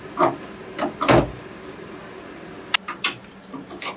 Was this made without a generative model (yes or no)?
yes